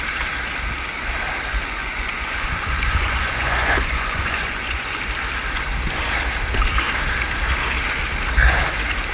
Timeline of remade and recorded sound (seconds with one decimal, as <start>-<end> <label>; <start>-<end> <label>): 0.0-1.5 recorded; 1.5-5.0 remade; 5.0-9.1 recorded